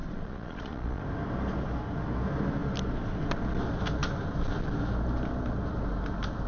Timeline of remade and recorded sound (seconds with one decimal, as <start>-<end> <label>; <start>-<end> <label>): 0.0-1.0 remade; 1.0-6.5 recorded